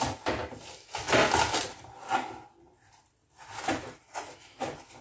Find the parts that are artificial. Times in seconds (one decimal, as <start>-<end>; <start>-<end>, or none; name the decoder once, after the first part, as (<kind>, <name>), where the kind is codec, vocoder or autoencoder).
none